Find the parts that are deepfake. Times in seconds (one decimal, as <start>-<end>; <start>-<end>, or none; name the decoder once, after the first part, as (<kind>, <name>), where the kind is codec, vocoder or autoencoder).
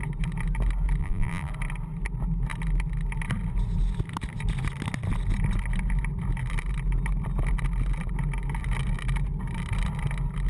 1.0-1.5 (vocoder, BigVGAN v2)